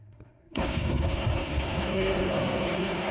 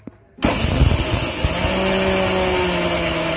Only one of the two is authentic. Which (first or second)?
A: second